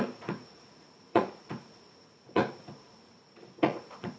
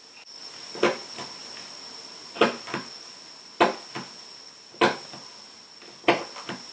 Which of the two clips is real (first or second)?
second